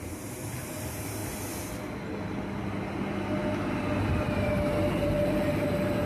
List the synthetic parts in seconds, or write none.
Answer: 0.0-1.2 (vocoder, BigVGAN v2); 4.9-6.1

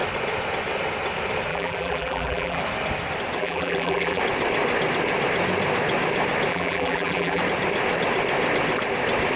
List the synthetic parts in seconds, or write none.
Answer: 1.5-2.6 (vocoder, BigVGAN v2); 3.4-4.2; 6.5-7.4

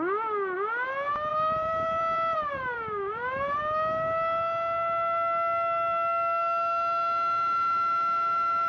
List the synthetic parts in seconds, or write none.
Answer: 1.3-3.6 (vocoder, BigVGAN v2)

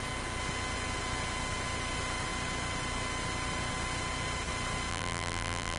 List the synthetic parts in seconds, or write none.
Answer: 4.9-5.8 (vocoder, BigVGAN v2)